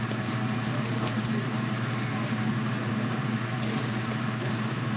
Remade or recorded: remade